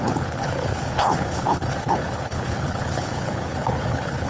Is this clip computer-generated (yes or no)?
yes